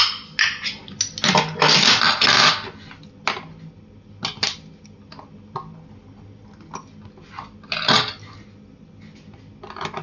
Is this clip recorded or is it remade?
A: recorded